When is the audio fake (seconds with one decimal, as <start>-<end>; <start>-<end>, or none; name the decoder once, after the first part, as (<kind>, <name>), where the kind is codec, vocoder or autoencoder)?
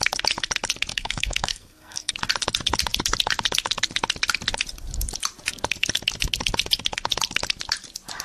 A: 0.9-2.1 (codec, SNAC)